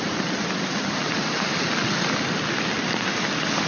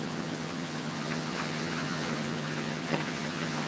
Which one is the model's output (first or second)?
second